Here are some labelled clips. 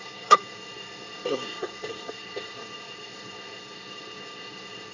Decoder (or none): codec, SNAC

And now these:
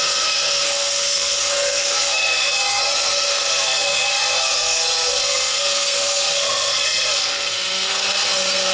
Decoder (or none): codec, SNAC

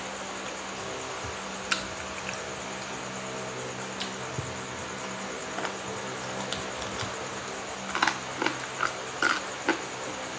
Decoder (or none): none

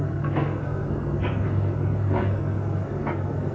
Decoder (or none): codec, SNAC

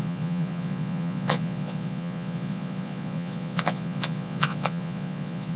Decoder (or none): vocoder, Vocos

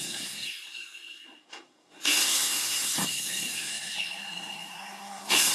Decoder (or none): codec, SNAC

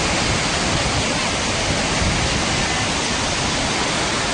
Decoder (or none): none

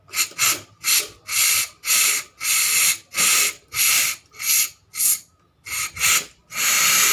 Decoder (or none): none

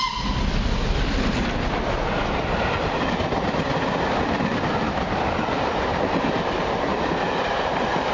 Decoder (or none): none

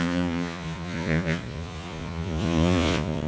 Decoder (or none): vocoder, Vocos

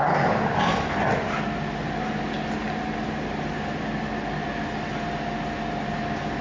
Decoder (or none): none